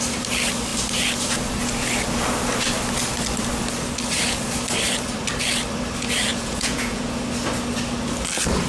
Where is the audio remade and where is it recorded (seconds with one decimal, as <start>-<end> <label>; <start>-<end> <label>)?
0.0-6.3 recorded; 6.3-7.0 remade; 7.0-8.7 recorded